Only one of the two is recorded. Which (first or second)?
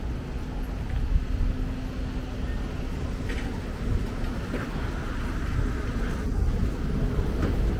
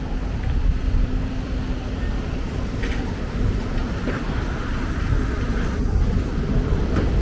first